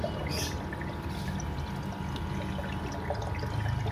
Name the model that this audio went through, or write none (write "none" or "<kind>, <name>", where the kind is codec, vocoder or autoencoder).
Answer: none